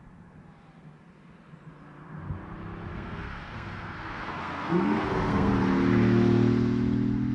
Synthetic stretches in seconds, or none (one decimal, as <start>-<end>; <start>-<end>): 2.9-5.5